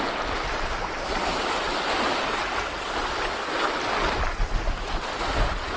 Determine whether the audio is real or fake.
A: real